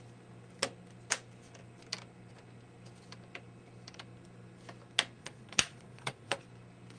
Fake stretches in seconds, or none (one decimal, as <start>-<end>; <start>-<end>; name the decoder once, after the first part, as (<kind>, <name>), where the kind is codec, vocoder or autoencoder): 5.2-6.4 (vocoder, Vocos)